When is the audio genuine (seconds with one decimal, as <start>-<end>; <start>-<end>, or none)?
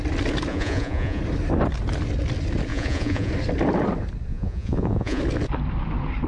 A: 0.0-0.5; 1.2-2.7; 3.3-4.3; 5.2-6.3